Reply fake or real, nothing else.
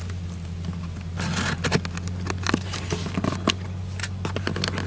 real